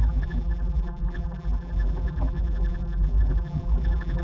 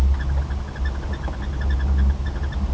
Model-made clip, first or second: first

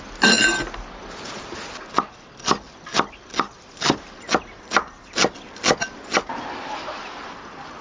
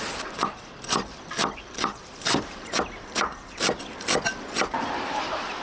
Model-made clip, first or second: second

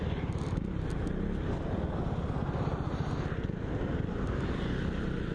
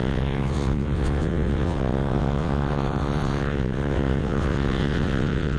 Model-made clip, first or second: second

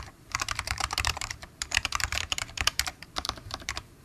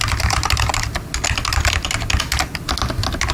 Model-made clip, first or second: first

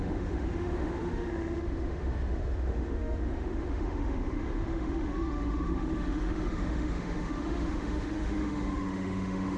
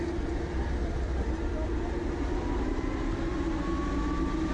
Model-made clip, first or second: first